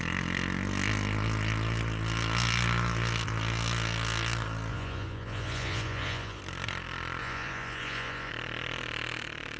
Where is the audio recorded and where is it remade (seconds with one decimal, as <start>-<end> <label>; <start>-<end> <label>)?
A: 0.0-4.7 recorded; 4.7-6.4 remade; 6.4-7.2 recorded; 7.2-8.3 remade; 8.3-9.6 recorded